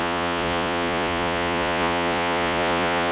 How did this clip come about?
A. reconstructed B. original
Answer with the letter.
A